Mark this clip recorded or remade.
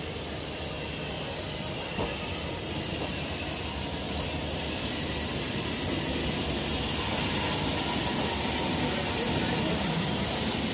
recorded